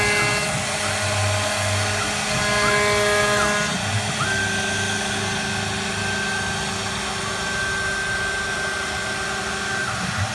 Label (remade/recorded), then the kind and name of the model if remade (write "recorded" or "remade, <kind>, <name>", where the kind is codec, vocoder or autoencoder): recorded